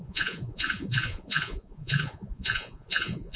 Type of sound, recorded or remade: remade